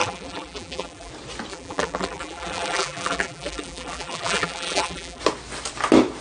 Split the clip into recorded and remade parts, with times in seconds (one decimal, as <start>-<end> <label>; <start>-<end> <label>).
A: 0.0-1.1 remade; 1.1-1.5 recorded; 1.5-5.2 remade; 5.2-6.2 recorded